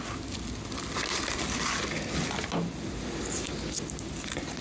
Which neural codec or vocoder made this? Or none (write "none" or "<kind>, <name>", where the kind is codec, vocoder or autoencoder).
none